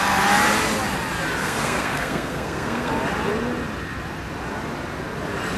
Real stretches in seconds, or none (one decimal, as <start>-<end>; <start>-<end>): 0.0-1.4; 2.9-5.6